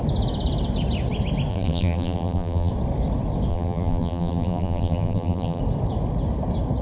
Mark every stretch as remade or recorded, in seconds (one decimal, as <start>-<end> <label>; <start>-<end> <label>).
0.0-1.5 recorded; 1.5-2.7 remade; 2.7-3.5 recorded; 3.5-5.6 remade; 5.6-6.8 recorded